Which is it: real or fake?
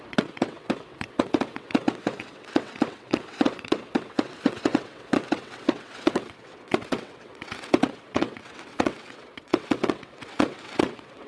fake